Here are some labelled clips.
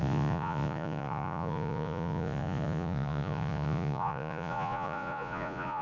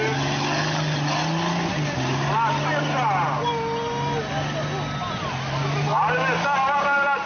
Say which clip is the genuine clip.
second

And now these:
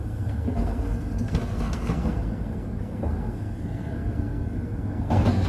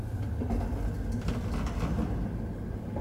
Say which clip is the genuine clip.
second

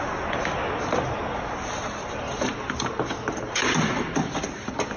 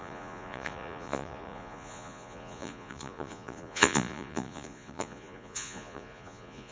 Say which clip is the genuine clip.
first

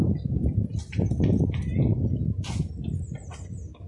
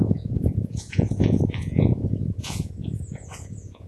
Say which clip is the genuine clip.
first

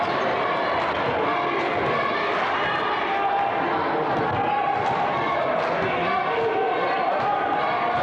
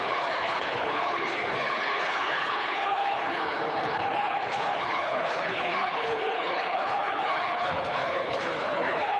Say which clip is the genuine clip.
first